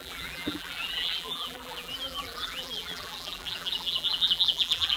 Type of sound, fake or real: fake